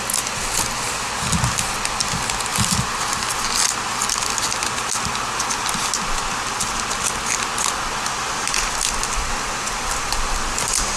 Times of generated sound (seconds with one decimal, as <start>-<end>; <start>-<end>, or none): none